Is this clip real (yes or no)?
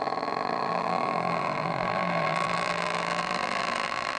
no